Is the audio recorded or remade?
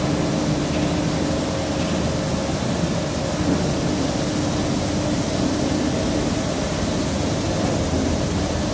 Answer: recorded